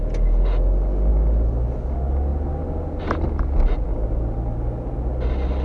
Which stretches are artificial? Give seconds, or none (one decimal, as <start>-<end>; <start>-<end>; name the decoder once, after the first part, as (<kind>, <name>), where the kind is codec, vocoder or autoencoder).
none